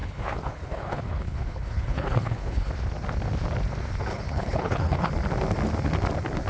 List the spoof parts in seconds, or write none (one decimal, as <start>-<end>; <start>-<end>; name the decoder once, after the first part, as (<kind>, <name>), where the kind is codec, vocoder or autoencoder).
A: 0.0-2.7 (codec, HILCodec); 4.1-5.1

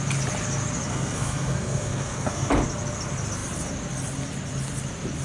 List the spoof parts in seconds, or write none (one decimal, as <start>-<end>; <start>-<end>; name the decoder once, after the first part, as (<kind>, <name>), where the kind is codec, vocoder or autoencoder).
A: 0.9-2.5 (codec, SNAC)

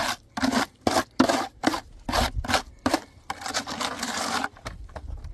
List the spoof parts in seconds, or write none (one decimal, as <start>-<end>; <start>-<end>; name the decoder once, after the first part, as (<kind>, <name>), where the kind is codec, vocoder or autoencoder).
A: none

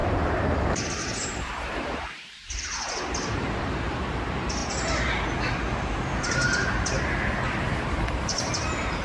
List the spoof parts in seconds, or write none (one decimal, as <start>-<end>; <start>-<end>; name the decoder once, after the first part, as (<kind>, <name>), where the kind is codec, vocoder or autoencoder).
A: 0.0-4.6 (vocoder, BigVGAN v2); 5.9-9.0

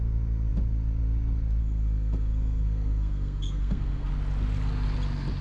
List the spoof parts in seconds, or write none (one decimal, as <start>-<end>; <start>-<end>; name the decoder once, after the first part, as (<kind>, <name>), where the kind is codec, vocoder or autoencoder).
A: 1.6-4.1 (codec, SNAC)

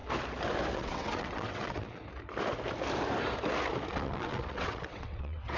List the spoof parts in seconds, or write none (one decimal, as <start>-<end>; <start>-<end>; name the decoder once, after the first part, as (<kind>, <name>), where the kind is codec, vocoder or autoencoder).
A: 0.7-2.0 (vocoder, WaveNeXt); 3.9-5.6

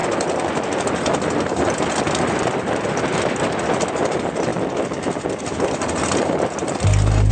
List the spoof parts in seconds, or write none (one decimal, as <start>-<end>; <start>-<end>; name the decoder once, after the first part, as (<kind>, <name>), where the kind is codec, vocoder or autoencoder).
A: none